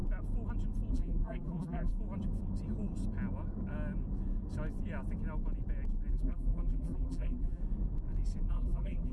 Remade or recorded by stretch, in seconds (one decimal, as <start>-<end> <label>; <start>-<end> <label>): 0.0-0.9 recorded; 0.9-1.9 remade; 1.9-6.1 recorded; 6.1-7.6 remade; 7.6-8.5 recorded; 8.5-9.1 remade